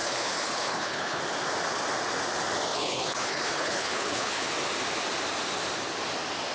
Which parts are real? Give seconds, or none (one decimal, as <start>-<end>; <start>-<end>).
1.2-2.7; 4.5-6.5